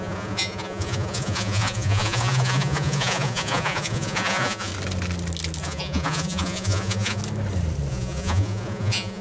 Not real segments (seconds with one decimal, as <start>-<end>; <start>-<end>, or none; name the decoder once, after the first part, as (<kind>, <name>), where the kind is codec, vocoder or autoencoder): 0.0-4.7 (vocoder, Vocos); 5.6-7.2; 7.9-9.2